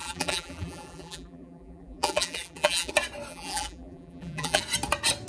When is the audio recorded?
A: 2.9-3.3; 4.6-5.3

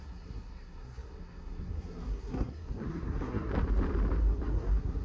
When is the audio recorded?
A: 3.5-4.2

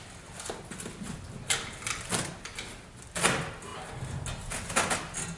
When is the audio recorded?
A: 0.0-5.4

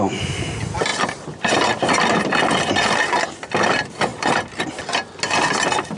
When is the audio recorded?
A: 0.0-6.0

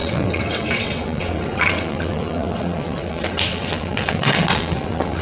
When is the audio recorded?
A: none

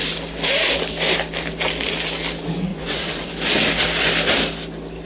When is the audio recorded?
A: 0.0-2.7; 3.3-5.1

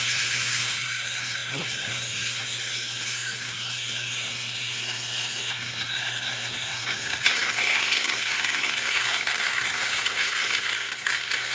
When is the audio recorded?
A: none

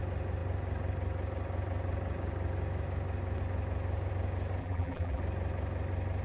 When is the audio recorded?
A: 0.0-4.6; 5.2-6.2